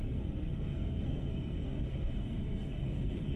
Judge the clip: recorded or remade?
remade